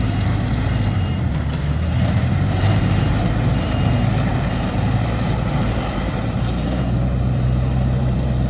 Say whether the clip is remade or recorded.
remade